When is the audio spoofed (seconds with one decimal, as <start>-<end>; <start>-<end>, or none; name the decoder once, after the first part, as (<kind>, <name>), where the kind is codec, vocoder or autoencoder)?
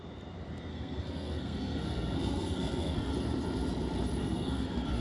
0.7-3.1 (codec, SNAC); 4.2-5.0